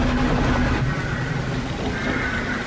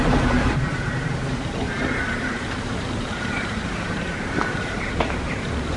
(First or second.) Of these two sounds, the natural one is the first